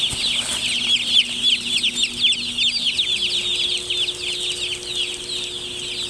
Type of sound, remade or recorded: recorded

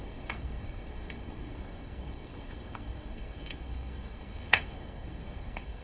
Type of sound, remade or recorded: remade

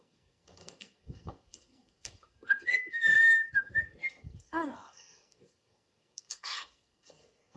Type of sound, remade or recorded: remade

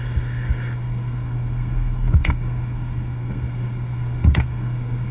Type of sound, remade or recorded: remade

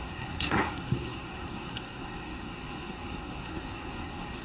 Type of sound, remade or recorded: remade